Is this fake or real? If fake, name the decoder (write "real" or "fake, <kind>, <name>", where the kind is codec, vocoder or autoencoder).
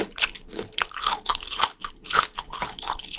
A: fake, codec, HILCodec